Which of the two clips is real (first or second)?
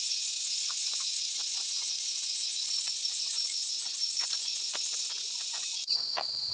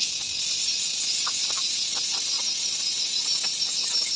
second